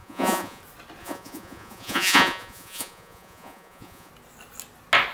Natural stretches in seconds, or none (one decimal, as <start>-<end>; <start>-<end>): 0.6-1.0; 4.1-5.1